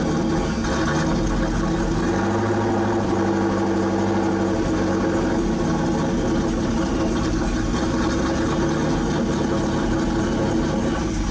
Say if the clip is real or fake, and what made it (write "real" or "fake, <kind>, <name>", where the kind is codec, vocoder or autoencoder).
real